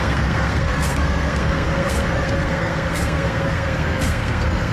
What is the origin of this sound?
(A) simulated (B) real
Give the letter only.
A